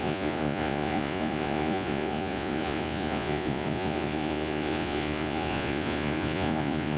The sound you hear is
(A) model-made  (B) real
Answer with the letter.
A